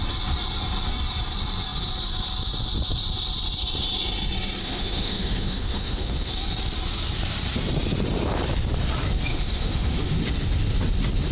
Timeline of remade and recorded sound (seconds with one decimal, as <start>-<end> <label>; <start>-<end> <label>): 0.0-4.6 recorded; 4.6-6.3 remade; 6.3-9.3 recorded; 9.3-10.1 remade; 10.1-11.3 recorded